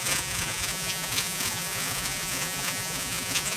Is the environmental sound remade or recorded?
remade